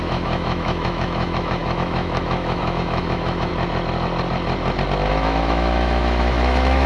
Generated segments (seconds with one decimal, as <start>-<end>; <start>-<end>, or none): 0.0-3.5; 5.1-6.9